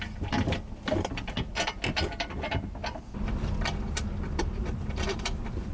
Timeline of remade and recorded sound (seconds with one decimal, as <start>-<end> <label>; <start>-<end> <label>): 0.0-2.8 recorded; 2.8-5.7 remade